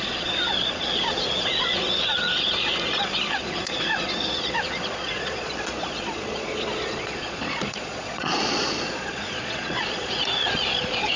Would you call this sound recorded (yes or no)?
no